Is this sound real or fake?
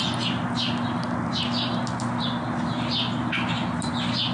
real